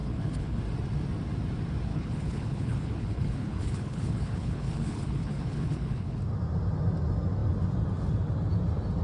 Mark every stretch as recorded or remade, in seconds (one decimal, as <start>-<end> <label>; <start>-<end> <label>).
0.0-0.6 remade; 0.6-1.9 recorded; 1.9-6.2 remade; 6.2-9.0 recorded